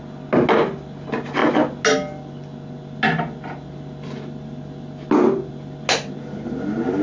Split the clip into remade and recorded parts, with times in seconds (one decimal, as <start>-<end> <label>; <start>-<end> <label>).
0.0-7.0 recorded

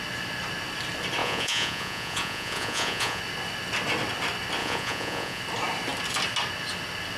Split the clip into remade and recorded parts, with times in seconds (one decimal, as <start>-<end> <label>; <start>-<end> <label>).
0.0-1.2 recorded; 1.2-3.2 remade; 3.2-4.6 recorded; 4.6-5.4 remade; 5.4-7.2 recorded

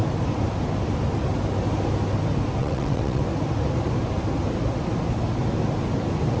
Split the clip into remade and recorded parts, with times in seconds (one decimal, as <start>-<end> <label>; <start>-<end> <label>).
0.0-2.6 recorded; 2.6-3.2 remade; 3.2-6.4 recorded

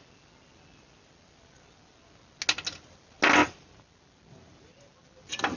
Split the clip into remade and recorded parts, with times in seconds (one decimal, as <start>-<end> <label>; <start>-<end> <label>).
0.0-5.6 recorded

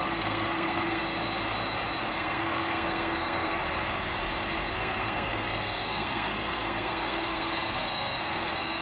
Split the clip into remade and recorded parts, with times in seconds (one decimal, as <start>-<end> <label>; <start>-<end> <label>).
0.0-1.0 remade; 1.0-2.1 recorded; 2.1-3.6 remade; 3.6-4.7 recorded; 4.7-8.8 remade

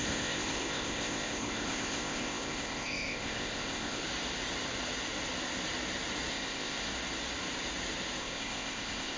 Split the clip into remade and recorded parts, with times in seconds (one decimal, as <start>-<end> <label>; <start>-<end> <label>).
0.0-4.0 remade; 4.0-6.3 recorded; 6.3-6.9 remade; 6.9-8.2 recorded; 8.2-9.2 remade

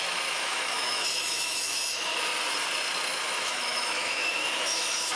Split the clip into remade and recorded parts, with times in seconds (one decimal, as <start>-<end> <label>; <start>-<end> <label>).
0.0-2.1 remade; 2.1-3.1 recorded; 3.1-5.2 remade

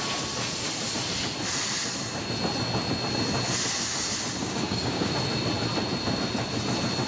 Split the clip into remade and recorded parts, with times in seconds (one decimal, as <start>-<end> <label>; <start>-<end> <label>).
0.0-4.4 recorded; 4.4-5.1 remade; 5.1-7.1 recorded